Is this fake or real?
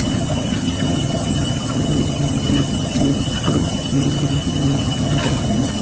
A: fake